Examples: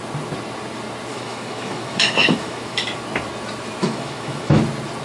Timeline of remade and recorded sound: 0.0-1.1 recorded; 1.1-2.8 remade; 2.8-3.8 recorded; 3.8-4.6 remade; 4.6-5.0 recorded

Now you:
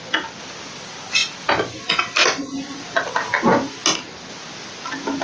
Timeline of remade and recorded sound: 0.0-5.2 recorded

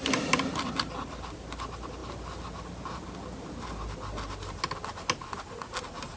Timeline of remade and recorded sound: 0.0-6.2 recorded

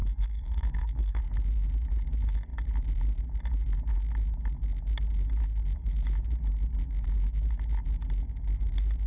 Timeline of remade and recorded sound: 0.0-1.2 remade; 1.2-9.1 recorded

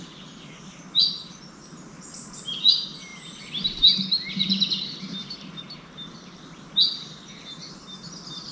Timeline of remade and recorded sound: 0.0-8.5 recorded